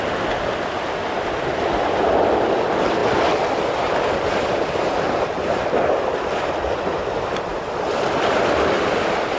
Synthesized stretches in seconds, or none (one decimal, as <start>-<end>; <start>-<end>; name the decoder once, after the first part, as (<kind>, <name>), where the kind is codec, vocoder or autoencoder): 0.0-7.5 (vocoder, BigVGAN v2); 8.3-9.4